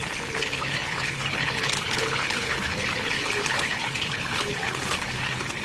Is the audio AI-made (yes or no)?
yes